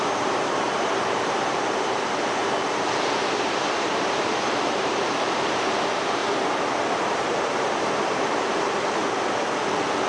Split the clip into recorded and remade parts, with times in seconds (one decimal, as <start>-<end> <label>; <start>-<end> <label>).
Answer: 0.0-2.4 remade; 2.4-3.2 recorded; 3.2-6.2 remade; 6.2-6.9 recorded; 6.9-9.0 remade; 9.0-10.1 recorded